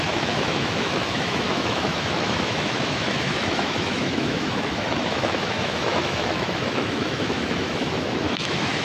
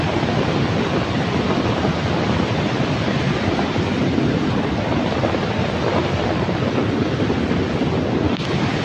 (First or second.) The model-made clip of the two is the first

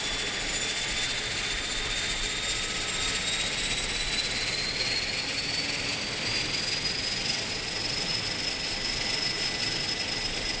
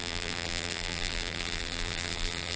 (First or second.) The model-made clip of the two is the second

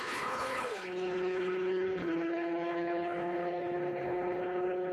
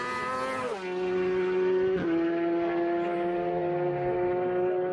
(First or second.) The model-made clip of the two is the first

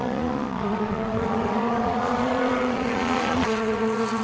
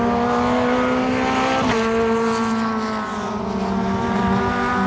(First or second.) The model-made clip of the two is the first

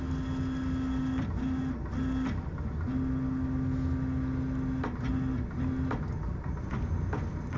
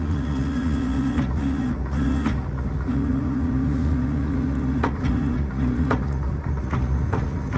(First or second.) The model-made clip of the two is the second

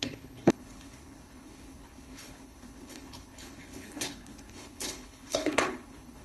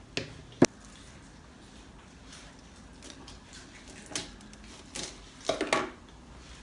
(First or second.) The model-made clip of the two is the first